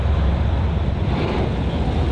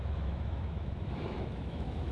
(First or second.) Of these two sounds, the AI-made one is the second